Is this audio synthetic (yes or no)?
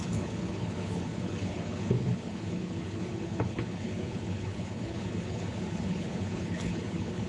yes